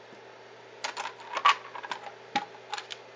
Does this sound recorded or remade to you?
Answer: recorded